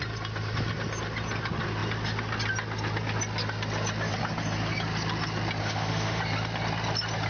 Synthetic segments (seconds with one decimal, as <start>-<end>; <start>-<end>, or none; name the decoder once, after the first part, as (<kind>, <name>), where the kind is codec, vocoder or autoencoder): 5.6-6.2 (autoencoder, DAC-VAE)